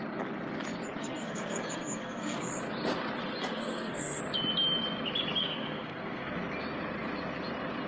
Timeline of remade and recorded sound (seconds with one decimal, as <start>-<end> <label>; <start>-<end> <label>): 0.0-1.0 recorded; 1.0-2.5 remade; 2.5-3.4 recorded; 3.4-4.2 remade; 4.2-5.4 recorded; 5.4-6.3 remade; 6.3-7.9 recorded